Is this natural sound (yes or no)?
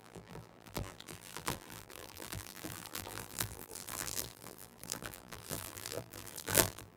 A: no